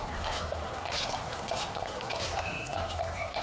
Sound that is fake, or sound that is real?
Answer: fake